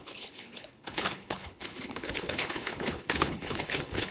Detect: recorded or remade remade